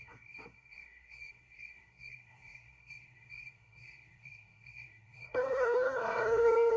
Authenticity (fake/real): fake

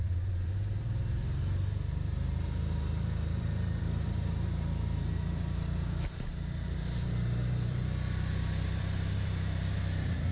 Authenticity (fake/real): fake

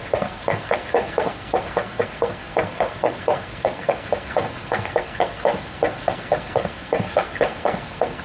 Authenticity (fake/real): fake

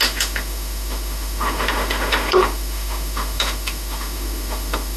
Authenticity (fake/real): fake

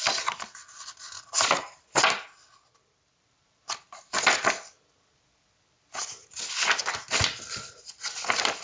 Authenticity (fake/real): real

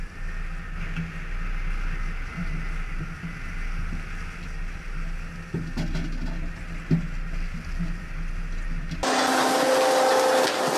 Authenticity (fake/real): real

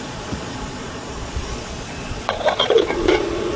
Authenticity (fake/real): fake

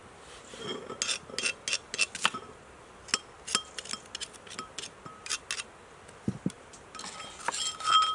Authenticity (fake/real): real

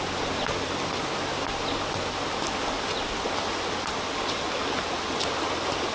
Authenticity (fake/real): real